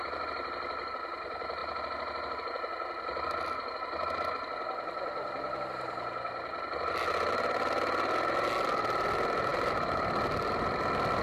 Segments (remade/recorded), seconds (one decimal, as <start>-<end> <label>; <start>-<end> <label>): 0.0-11.2 recorded